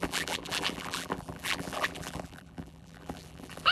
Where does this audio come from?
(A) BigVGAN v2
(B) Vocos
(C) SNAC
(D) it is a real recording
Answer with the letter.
A